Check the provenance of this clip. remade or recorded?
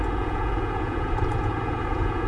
remade